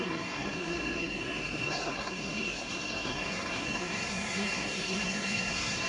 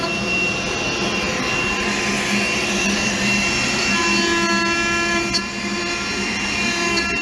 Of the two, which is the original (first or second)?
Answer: second